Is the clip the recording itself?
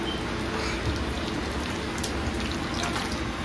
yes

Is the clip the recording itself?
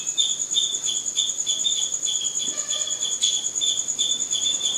yes